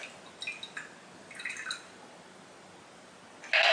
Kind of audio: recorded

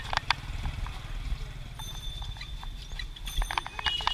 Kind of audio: remade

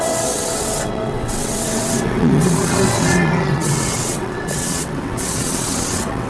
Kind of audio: remade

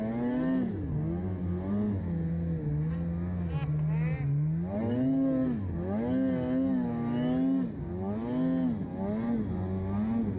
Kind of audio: recorded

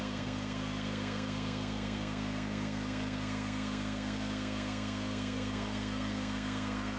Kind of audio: remade